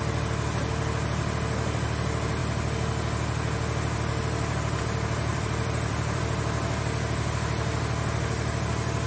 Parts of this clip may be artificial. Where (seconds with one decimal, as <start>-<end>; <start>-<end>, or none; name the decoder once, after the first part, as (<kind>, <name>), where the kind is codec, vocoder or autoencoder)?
5.3-6.2 (vocoder, BigVGAN v2)